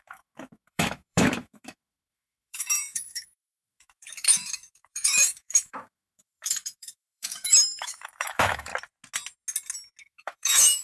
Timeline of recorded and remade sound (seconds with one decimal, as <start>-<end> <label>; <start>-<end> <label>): 0.0-8.7 remade; 8.7-10.0 recorded; 10.0-10.8 remade

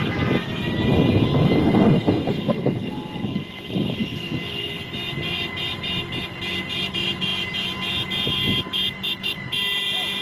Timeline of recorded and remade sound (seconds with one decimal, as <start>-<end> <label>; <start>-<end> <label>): 0.0-1.6 recorded; 1.6-3.5 remade; 3.5-10.2 recorded

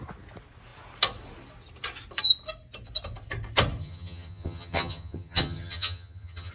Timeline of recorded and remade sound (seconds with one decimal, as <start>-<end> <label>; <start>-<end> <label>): 0.0-3.8 recorded; 3.8-6.5 remade